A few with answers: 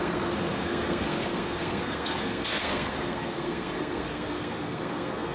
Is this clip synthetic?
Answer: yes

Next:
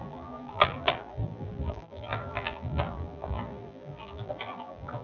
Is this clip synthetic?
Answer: yes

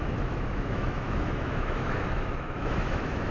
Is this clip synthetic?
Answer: yes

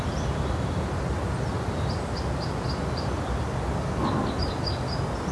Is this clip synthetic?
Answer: no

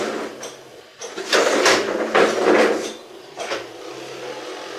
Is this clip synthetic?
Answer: no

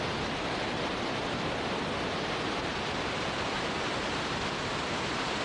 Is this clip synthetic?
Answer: no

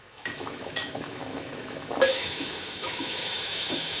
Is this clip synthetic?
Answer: yes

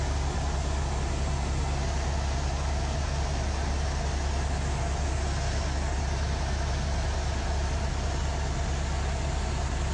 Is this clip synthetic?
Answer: no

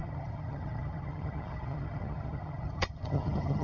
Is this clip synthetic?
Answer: yes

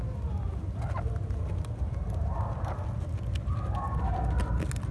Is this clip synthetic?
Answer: no